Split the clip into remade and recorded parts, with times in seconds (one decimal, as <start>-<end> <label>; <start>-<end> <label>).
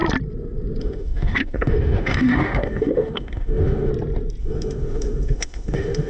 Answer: 0.0-0.8 recorded; 0.8-3.9 remade; 3.9-4.4 recorded; 4.4-6.1 remade